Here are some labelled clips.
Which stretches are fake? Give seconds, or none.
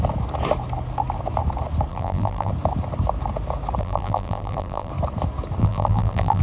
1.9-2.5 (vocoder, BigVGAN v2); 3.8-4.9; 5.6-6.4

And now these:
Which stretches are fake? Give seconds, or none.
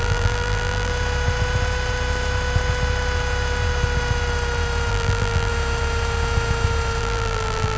0.0-0.9 (vocoder, BigVGAN v2); 4.9-5.5; 7.0-7.8